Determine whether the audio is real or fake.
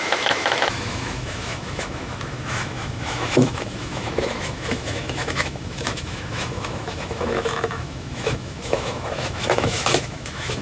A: fake